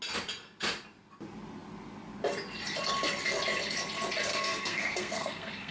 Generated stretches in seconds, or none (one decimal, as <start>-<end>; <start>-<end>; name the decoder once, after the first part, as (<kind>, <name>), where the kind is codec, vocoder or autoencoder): 4.3-5.7 (codec, SNAC)